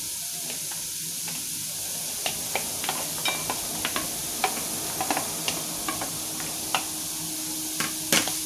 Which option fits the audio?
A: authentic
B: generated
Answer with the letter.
A